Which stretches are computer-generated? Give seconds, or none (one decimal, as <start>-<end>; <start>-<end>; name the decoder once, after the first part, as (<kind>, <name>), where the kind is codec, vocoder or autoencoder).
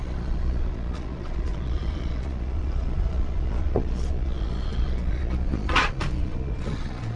0.0-7.2 (vocoder, Vocos)